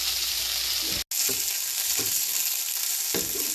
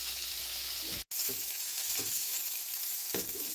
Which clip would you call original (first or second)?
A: first